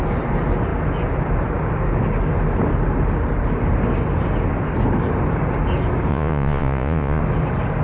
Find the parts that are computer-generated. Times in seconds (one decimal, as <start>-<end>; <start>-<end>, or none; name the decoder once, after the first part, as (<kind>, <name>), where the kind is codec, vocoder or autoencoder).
6.1-7.2 (vocoder, Vocos)